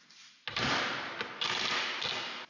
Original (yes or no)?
yes